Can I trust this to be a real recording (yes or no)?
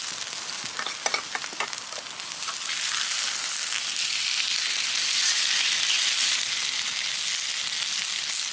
yes